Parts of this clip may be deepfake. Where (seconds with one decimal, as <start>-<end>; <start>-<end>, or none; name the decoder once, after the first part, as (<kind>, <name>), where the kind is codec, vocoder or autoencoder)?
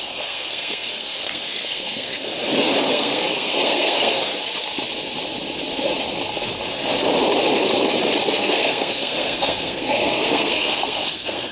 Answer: 0.0-2.3 (codec, SNAC); 2.9-4.2; 8.3-11.5